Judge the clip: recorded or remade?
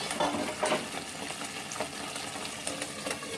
recorded